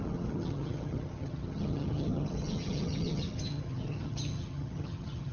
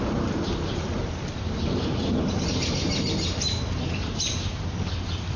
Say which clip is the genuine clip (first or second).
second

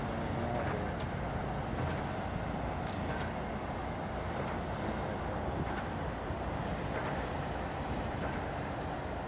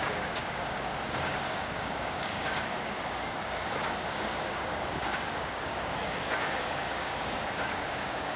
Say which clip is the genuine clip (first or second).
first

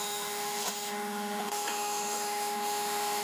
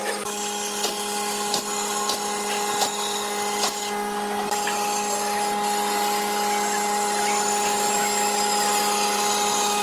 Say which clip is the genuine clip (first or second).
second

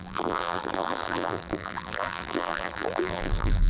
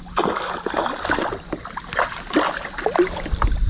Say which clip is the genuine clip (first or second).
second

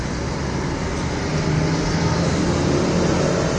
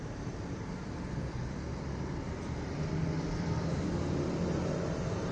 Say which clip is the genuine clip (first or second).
first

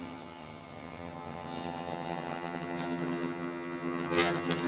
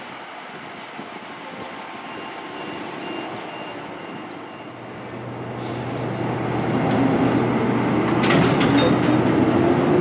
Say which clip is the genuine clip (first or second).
second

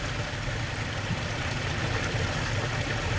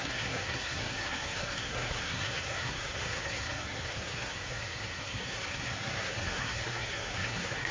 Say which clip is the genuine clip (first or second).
first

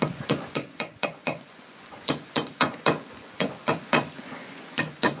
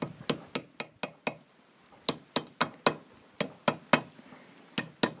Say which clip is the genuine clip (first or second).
second